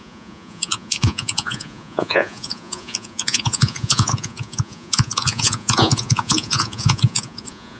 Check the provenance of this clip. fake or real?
fake